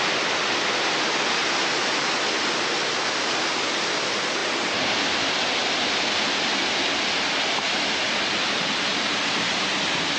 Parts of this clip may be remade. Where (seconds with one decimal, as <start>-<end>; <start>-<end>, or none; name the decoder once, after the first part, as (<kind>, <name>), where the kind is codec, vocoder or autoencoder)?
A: none